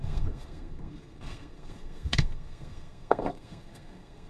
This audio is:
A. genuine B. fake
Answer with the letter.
B